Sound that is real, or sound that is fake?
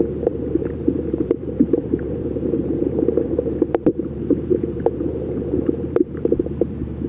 fake